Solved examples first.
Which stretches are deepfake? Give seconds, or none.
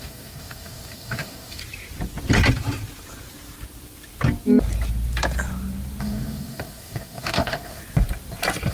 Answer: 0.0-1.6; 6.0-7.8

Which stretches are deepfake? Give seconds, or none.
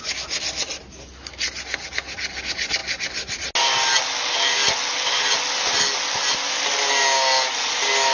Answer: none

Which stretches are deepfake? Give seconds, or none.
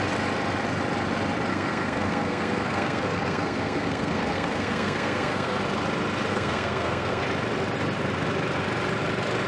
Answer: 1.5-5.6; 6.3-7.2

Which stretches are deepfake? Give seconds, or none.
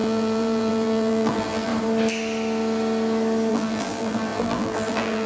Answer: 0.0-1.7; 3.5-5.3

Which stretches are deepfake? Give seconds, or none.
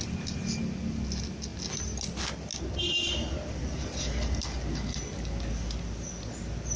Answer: none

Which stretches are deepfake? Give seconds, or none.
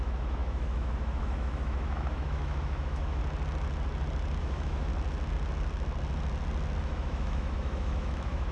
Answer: 0.0-3.2; 4.4-4.9; 6.8-8.5